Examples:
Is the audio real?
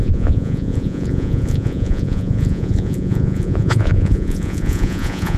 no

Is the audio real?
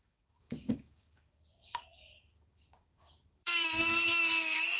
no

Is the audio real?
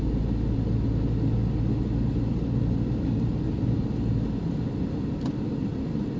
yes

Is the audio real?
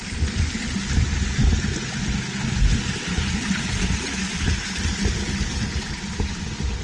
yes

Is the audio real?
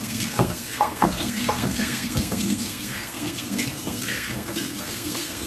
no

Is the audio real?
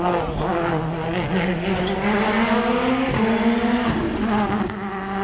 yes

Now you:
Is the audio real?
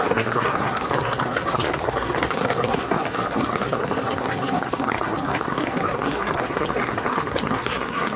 no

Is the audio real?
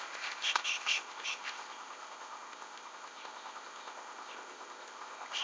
no